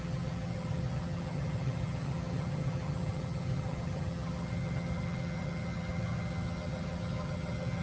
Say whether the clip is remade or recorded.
remade